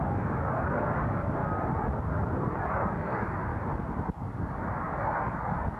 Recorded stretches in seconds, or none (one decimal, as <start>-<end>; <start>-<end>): 1.4-2.6; 3.5-4.2